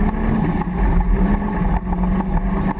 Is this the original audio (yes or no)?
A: yes